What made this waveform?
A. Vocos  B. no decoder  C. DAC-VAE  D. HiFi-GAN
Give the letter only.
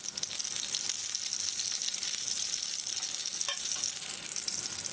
B